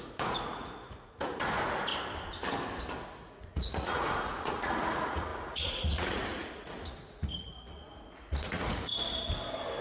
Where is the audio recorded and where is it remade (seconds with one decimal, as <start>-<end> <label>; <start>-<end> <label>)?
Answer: 0.0-1.9 remade; 1.9-3.0 recorded; 3.0-8.9 remade; 8.9-9.8 recorded

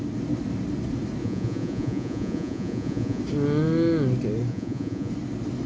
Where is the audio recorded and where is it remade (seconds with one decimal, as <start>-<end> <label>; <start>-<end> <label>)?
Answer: 0.0-1.2 recorded; 1.2-3.2 remade; 3.2-4.5 recorded; 4.5-5.1 remade; 5.1-5.7 recorded

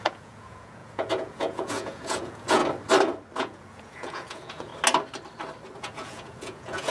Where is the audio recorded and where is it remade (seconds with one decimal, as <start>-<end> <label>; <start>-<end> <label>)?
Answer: 0.0-2.6 remade; 2.6-3.4 recorded; 3.4-4.7 remade; 4.7-5.8 recorded; 5.8-6.9 remade